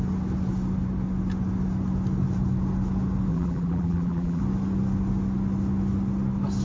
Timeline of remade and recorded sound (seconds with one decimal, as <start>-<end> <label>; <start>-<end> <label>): 0.0-3.3 recorded; 3.3-4.4 remade; 4.4-6.6 recorded